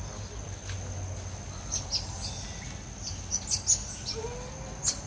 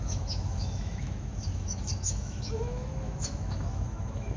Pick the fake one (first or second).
second